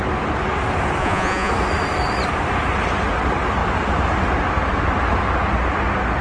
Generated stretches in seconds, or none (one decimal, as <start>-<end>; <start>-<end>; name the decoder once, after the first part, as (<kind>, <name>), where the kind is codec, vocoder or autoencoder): 1.0-1.5 (vocoder, Vocos)